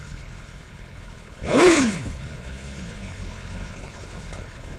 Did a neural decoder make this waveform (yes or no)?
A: yes